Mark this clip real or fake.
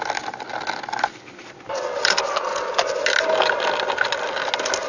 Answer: real